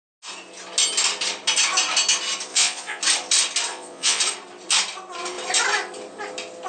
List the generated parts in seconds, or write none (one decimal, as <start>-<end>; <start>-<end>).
2.5-3.0; 3.7-4.2